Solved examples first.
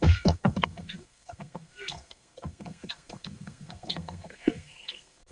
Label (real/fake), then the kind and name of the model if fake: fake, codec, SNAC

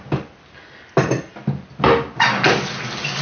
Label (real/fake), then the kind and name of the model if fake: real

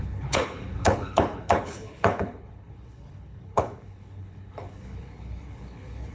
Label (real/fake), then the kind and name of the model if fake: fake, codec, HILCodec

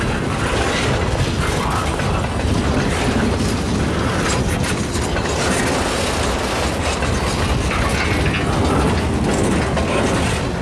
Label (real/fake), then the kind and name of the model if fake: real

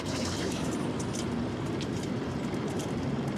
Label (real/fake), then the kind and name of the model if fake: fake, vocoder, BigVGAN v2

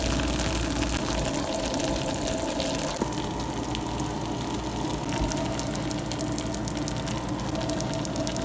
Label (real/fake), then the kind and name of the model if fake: real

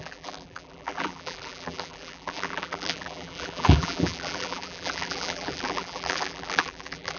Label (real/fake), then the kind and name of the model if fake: fake, vocoder, BigVGAN v2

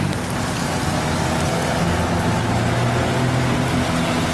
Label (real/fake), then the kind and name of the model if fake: real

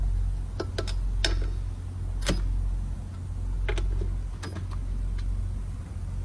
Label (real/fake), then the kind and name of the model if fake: real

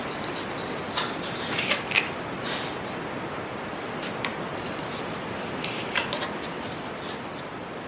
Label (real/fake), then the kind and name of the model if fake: real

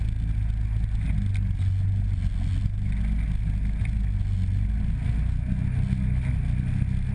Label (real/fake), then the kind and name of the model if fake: real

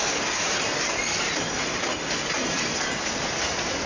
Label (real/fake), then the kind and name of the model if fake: real